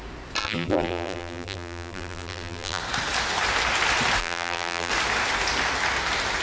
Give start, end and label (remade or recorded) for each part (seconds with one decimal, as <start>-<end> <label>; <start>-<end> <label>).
0.0-0.4 recorded; 0.4-2.8 remade; 2.8-4.2 recorded; 4.2-4.9 remade; 4.9-6.4 recorded